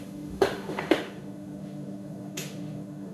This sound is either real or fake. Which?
fake